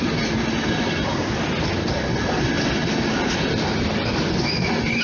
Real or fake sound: real